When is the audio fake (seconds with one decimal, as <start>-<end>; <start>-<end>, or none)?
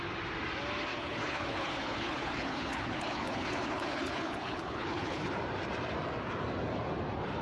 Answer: 0.9-5.3